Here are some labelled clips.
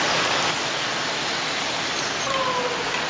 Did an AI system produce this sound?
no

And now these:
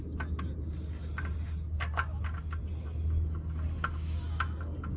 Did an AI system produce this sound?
no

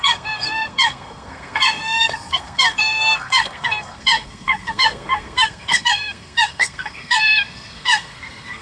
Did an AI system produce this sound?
yes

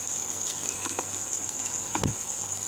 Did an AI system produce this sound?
yes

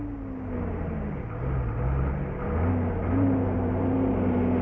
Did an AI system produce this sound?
no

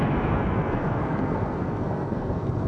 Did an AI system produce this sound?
yes